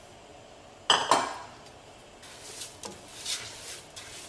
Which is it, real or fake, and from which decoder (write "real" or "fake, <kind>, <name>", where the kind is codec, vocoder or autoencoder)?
real